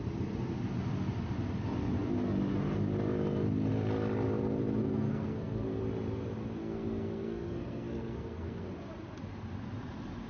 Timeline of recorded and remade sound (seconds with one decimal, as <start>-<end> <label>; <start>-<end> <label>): 0.0-4.8 recorded; 4.8-5.8 remade; 5.8-6.6 recorded; 6.6-8.7 remade; 8.7-10.3 recorded